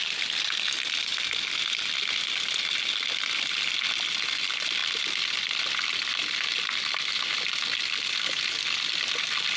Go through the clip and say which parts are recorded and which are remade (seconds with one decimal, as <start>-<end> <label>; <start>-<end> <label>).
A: 0.0-1.1 recorded; 1.1-2.1 remade; 2.1-4.8 recorded; 4.8-6.4 remade; 6.4-9.6 recorded